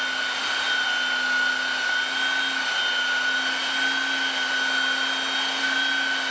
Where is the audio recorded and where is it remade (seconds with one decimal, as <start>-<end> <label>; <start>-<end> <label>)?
0.0-6.3 recorded